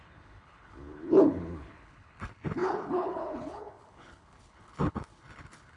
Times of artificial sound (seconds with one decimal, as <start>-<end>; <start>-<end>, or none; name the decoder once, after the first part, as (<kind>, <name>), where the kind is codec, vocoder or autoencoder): 0.0-5.8 (codec, HILCodec)